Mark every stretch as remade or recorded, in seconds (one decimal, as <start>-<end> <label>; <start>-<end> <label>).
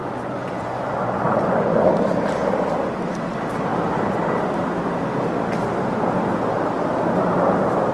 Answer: 0.0-1.9 remade; 1.9-7.9 recorded